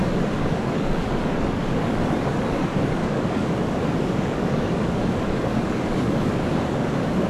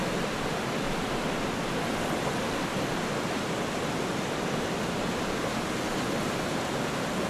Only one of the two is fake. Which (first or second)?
first